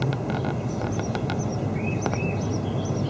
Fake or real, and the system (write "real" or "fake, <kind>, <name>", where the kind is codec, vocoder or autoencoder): real